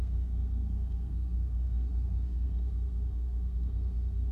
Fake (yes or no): yes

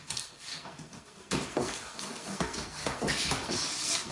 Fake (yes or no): yes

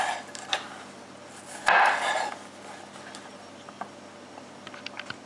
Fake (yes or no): no